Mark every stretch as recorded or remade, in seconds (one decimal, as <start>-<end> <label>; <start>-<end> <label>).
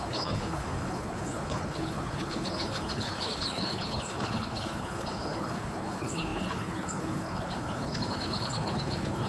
0.0-9.3 remade